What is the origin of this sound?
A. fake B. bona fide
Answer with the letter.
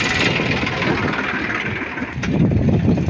B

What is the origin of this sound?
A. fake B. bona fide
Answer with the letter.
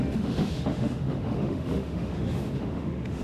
A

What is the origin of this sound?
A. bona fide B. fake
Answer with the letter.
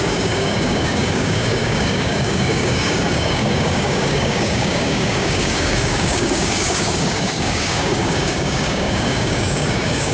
B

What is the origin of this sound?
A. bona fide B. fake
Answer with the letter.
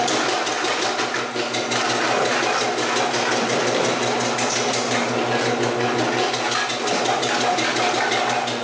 A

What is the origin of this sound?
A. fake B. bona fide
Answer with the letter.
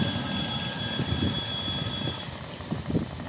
A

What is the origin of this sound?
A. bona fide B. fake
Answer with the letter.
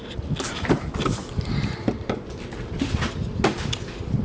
A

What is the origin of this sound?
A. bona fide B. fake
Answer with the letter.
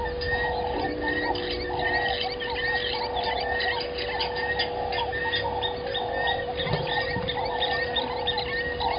A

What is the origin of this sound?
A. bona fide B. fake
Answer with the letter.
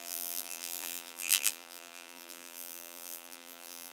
B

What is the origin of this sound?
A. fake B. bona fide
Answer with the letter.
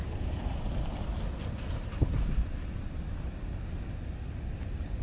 B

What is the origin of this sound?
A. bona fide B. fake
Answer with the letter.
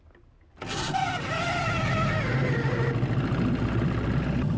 A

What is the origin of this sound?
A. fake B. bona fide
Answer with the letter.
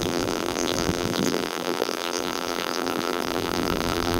A